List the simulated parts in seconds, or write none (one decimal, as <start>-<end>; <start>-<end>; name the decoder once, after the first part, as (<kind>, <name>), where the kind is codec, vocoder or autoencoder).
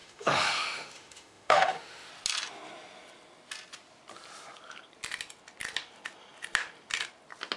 0.0-2.1 (autoencoder, DAC-VAE)